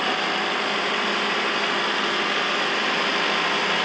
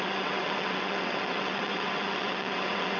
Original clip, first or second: first